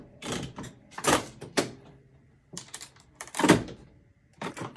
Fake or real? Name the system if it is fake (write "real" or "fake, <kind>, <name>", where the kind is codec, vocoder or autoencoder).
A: fake, vocoder, BigVGAN v2